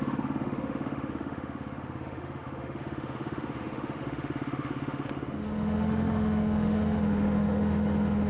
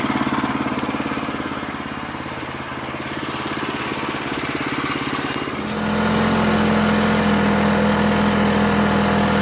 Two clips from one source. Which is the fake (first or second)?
first